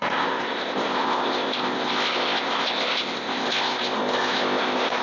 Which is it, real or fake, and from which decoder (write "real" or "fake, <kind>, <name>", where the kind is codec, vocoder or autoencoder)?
fake, codec, ZipCodec